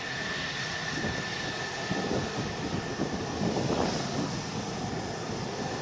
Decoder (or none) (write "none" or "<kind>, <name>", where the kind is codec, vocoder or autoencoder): none